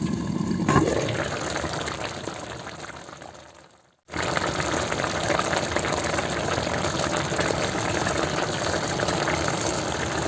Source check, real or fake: real